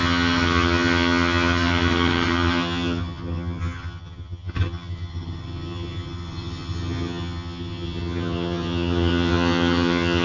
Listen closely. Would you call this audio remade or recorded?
remade